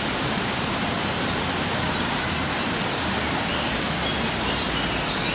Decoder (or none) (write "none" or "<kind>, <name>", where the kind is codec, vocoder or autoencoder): none